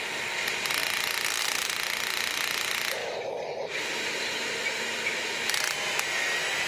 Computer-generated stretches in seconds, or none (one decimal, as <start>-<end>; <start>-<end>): 3.0-5.6